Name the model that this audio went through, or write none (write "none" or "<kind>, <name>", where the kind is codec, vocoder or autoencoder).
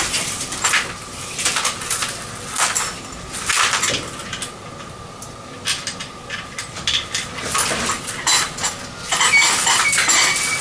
none